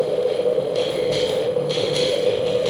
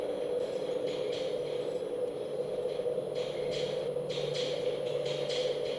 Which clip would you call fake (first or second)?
first